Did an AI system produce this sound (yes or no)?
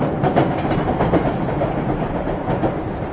yes